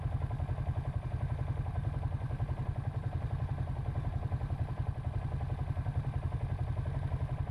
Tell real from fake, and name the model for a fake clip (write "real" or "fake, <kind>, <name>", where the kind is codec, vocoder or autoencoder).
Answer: real